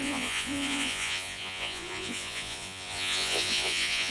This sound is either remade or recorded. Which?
remade